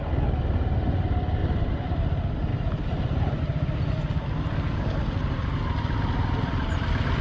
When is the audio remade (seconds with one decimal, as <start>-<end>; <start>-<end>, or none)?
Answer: 1.4-2.0; 2.5-3.4